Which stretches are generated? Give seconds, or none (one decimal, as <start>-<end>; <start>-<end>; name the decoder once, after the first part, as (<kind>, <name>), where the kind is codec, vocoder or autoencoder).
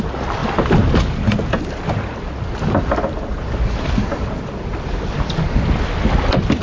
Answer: none